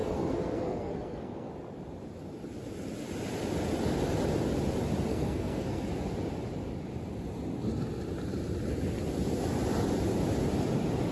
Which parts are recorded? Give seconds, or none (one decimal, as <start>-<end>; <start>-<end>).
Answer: 1.5-5.1; 5.9-11.1